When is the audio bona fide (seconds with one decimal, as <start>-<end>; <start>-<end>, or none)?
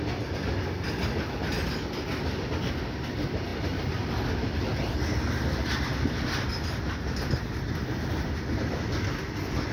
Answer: 0.0-9.7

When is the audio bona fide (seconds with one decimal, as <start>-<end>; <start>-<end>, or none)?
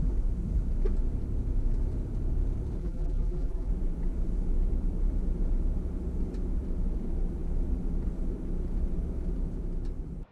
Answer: 0.0-2.8; 3.7-10.3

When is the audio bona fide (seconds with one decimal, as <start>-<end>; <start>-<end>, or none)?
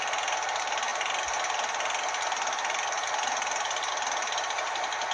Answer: 0.0-5.1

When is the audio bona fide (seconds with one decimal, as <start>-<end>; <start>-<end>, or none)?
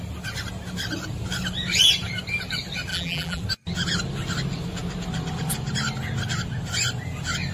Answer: 0.0-2.9; 3.4-7.5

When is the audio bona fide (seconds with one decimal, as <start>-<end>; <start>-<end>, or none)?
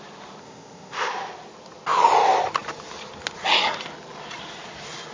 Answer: 0.0-0.4; 1.1-5.1